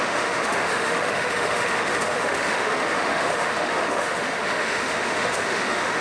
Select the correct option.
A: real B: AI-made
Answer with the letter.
B